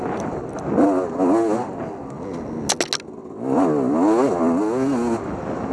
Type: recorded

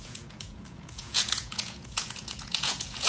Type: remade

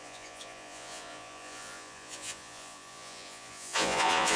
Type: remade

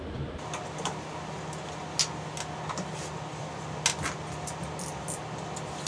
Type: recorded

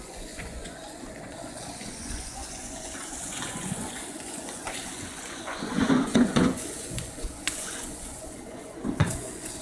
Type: remade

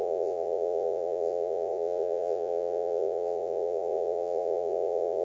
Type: remade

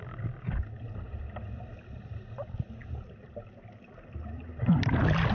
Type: recorded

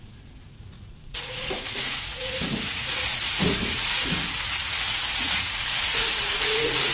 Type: remade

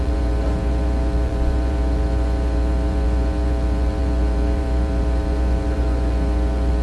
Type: remade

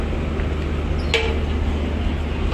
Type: recorded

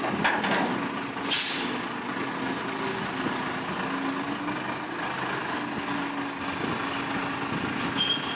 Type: recorded